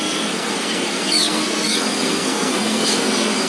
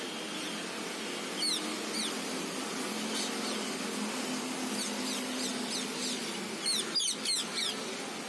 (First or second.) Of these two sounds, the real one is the second